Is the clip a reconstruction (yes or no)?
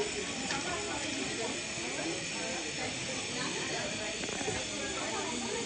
no